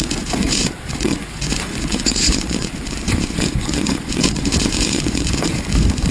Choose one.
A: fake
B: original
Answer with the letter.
A